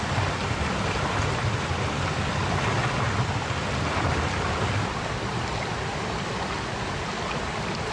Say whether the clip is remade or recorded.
recorded